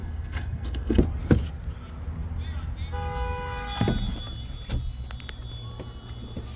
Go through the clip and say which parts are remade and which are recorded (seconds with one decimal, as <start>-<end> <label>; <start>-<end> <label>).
0.0-1.0 remade; 1.0-6.6 recorded